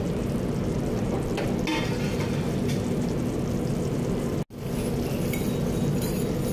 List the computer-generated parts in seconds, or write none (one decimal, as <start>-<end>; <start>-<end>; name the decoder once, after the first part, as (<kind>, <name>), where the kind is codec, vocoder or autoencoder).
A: 1.7-2.3 (vocoder, BigVGAN v2)